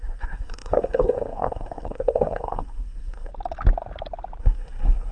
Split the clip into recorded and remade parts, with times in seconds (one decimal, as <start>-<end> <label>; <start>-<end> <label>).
0.0-3.3 remade; 3.3-4.4 recorded; 4.4-5.1 remade